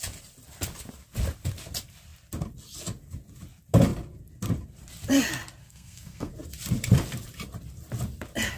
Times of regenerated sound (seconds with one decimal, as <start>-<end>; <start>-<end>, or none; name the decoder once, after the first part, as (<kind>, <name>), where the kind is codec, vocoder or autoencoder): 5.6-6.3 (codec, SNAC)